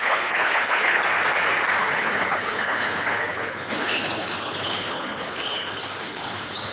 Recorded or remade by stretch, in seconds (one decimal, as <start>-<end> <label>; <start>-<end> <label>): 0.0-1.0 remade; 1.0-1.8 recorded; 1.8-6.7 remade